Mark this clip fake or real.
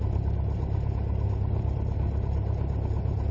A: real